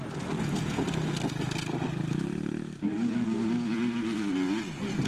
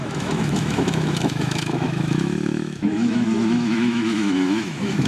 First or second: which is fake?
second